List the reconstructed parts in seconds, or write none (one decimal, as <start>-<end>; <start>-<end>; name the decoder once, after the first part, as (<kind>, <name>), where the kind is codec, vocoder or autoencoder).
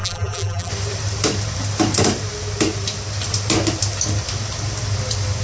0.0-0.7 (vocoder, BigVGAN v2)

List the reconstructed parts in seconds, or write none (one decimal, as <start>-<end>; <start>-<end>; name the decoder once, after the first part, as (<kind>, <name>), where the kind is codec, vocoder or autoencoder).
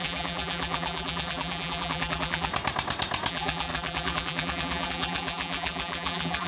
0.0-2.5 (vocoder, BigVGAN v2); 3.3-6.5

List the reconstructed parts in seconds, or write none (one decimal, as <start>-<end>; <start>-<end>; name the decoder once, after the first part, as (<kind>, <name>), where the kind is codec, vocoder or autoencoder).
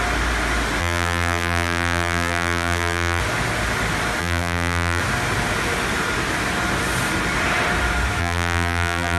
0.8-3.2 (vocoder, BigVGAN v2); 4.2-5.0; 8.2-9.2